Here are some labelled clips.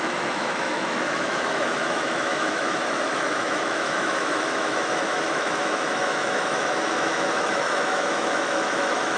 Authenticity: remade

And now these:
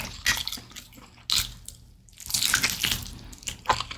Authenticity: recorded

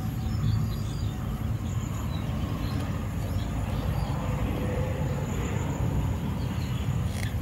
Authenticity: recorded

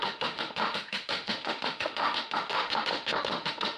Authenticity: remade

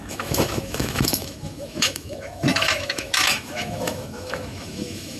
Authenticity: remade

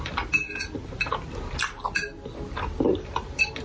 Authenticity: recorded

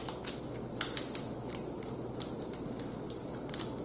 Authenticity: recorded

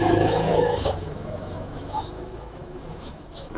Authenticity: remade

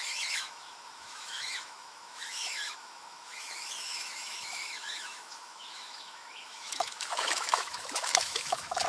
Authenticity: remade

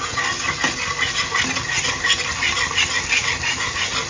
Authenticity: recorded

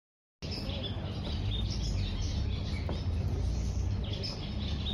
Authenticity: recorded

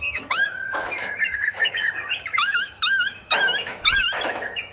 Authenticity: remade